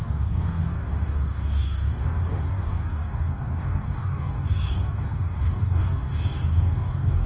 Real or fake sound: fake